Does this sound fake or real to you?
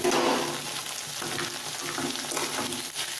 real